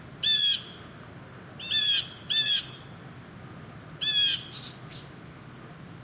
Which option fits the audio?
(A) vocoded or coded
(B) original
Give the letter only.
B